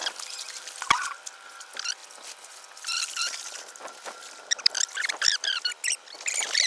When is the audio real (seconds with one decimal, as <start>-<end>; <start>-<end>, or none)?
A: 0.8-2.0; 2.6-6.7